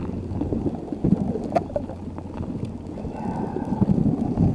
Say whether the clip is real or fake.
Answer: real